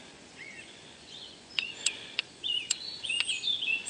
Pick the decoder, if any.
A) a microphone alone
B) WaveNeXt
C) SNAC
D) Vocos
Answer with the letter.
D